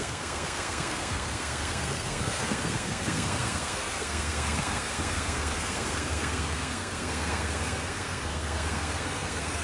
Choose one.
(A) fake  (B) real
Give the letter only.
A